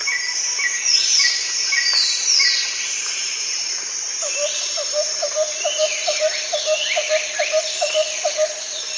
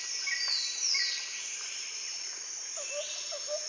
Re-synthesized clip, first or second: first